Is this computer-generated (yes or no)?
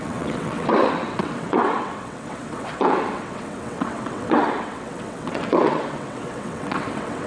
yes